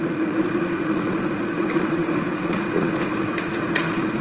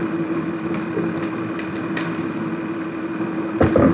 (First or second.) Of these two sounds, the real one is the second